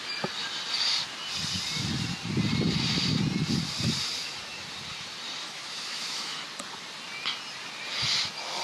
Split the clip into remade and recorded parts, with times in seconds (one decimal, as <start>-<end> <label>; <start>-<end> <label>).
0.0-5.4 recorded; 5.4-6.4 remade; 6.4-8.6 recorded